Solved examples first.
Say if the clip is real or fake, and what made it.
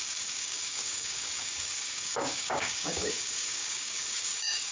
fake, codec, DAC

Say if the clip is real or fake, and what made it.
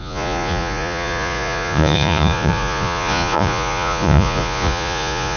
fake, vocoder, Vocos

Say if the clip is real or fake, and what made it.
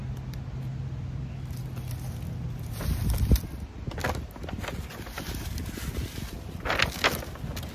real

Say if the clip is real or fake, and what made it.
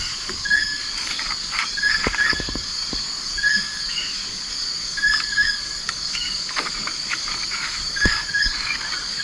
fake, codec, DAC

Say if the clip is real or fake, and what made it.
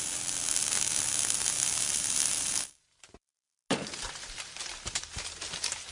real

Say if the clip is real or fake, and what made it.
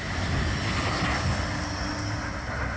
real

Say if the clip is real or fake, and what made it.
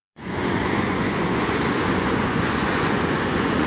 fake, vocoder, Vocos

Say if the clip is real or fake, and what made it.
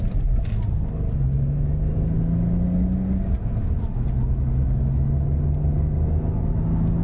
real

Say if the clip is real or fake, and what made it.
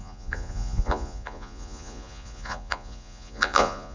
fake, vocoder, Vocos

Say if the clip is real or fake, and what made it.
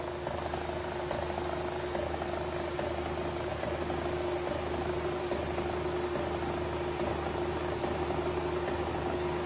real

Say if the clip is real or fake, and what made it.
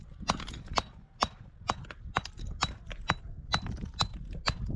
real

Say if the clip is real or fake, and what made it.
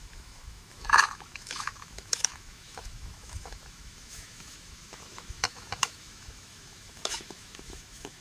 fake, autoencoder, DAC-VAE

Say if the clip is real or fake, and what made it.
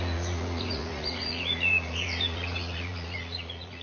fake, vocoder, Vocos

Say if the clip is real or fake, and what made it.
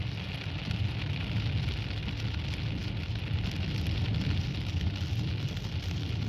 real